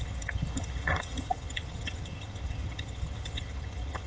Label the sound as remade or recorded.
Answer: remade